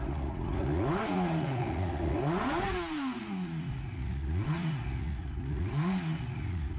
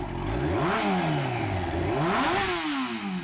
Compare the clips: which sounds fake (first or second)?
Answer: first